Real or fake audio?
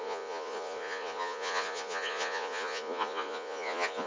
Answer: fake